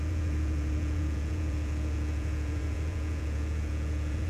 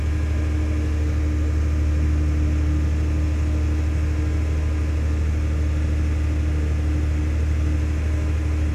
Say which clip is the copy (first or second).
first